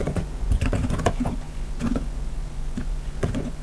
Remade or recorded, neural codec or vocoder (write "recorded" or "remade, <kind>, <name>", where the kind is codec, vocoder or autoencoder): remade, vocoder, Vocos